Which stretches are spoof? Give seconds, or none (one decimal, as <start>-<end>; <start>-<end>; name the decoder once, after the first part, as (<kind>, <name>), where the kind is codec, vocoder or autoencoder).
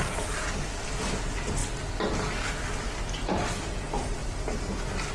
none